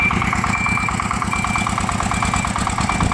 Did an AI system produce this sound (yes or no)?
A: no